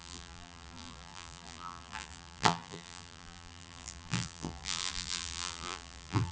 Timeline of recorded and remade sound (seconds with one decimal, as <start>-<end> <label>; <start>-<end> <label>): 0.0-6.3 remade